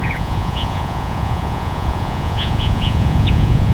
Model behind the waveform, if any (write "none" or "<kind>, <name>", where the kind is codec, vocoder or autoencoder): vocoder, Vocos